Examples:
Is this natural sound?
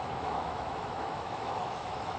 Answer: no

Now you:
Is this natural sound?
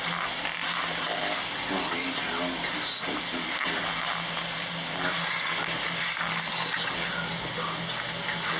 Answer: yes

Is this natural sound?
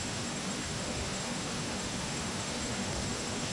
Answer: no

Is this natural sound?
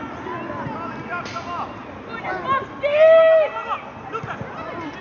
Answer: yes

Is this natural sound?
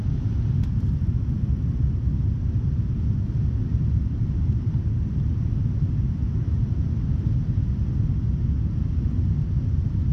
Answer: yes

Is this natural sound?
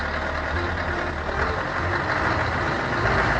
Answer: yes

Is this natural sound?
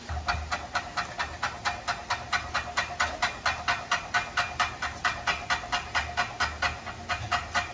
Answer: yes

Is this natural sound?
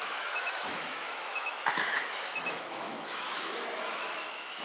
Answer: no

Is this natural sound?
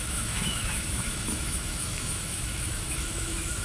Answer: no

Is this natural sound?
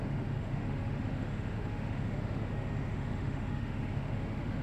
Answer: no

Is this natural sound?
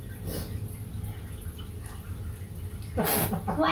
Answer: yes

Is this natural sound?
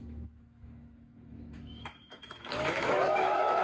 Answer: no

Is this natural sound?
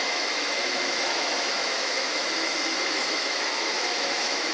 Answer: no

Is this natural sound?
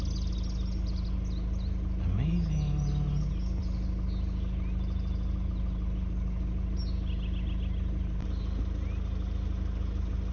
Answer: yes